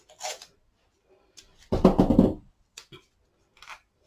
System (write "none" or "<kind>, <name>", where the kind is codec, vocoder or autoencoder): none